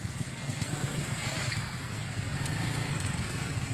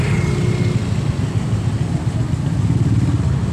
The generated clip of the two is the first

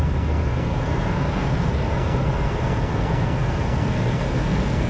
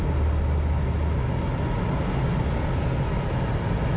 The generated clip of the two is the first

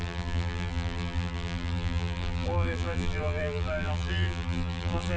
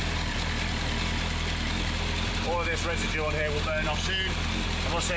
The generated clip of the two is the first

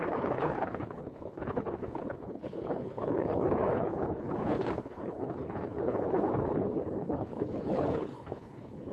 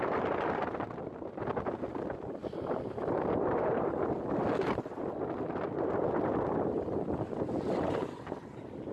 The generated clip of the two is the first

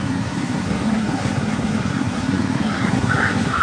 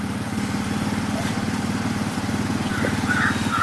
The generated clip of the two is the first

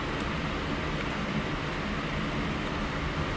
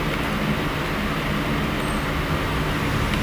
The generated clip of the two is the first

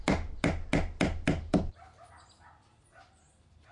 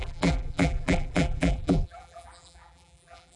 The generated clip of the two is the second